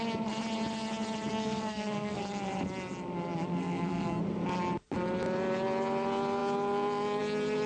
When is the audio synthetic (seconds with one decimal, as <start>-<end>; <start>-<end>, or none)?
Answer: 1.3-2.2; 3.6-4.2